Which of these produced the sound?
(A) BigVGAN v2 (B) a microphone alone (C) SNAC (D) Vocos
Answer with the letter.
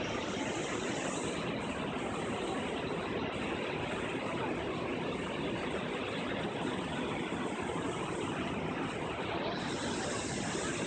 B